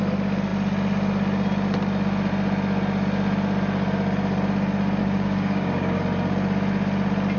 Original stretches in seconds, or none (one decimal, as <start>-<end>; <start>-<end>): 0.0-5.0; 6.0-7.4